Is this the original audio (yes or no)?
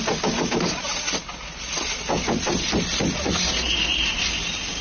yes